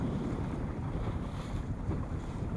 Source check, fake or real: fake